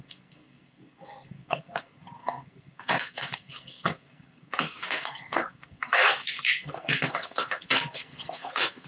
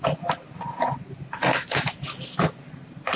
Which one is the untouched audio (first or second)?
second